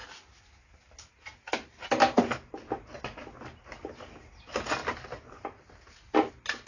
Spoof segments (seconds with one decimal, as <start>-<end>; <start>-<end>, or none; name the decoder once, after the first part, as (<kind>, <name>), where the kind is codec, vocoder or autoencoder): none